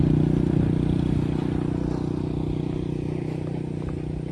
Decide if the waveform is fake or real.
real